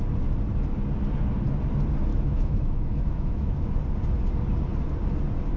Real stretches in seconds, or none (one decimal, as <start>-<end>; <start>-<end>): 0.0-2.1; 3.7-5.6